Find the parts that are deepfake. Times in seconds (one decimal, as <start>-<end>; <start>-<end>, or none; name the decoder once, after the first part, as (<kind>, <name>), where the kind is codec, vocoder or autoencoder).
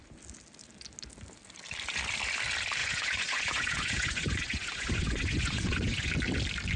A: 2.8-6.1 (vocoder, Vocos)